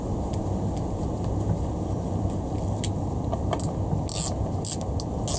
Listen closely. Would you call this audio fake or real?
real